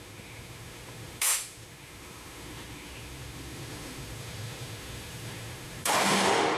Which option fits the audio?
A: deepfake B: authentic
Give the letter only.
A